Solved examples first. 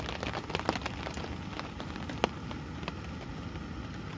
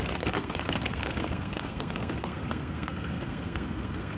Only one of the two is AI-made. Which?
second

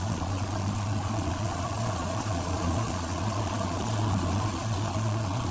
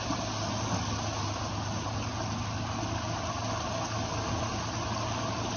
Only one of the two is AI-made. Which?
first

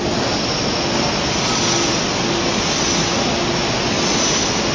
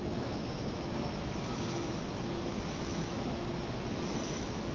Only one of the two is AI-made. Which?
second